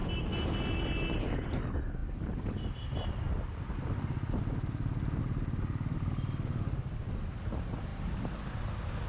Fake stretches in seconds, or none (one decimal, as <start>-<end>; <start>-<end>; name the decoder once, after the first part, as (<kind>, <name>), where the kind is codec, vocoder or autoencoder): none